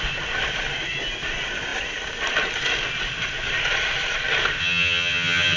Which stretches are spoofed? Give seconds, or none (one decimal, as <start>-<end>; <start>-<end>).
4.6-5.6